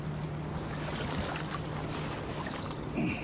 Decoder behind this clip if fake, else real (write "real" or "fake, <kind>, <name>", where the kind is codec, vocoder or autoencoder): real